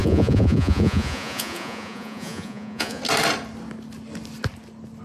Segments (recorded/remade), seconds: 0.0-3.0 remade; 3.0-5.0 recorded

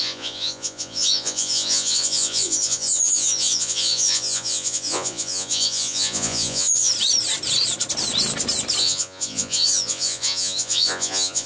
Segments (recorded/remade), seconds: 0.0-6.9 remade; 6.9-8.8 recorded; 8.8-11.5 remade

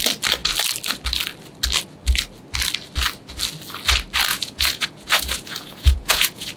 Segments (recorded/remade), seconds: 0.0-4.3 recorded; 4.3-6.6 remade

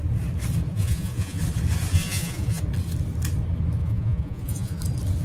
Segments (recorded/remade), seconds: 0.0-0.7 recorded; 0.7-1.4 remade; 1.4-1.9 recorded; 1.9-2.6 remade; 2.6-3.8 recorded; 3.8-4.8 remade; 4.8-5.2 recorded